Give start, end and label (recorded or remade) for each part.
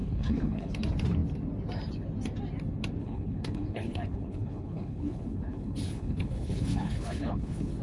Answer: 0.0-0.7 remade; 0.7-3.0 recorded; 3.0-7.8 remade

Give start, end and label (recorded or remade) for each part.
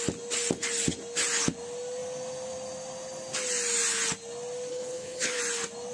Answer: 0.0-4.7 recorded; 4.7-5.4 remade; 5.4-5.9 recorded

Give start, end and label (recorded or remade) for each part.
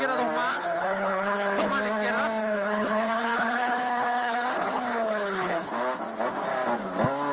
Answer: 0.0-0.5 recorded; 0.5-1.7 remade; 1.7-2.4 recorded; 2.4-5.7 remade; 5.7-7.3 recorded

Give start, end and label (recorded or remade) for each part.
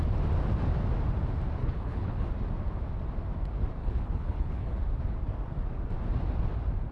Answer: 0.0-1.6 recorded; 1.6-2.3 remade; 2.3-3.8 recorded; 3.8-4.8 remade; 4.8-6.9 recorded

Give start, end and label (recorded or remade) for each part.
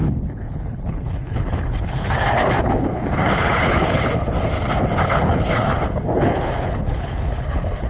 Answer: 0.0-4.3 remade; 4.3-5.1 recorded; 5.1-7.9 remade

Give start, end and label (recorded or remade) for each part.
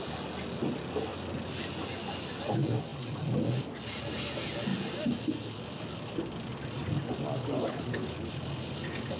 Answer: 0.0-7.4 recorded; 7.4-8.3 remade; 8.3-9.2 recorded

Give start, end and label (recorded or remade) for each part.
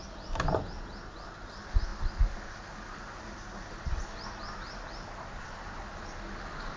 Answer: 0.0-6.8 recorded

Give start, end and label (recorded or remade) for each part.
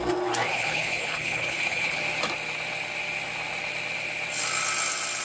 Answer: 0.0-0.5 recorded; 0.5-2.0 remade; 2.0-5.2 recorded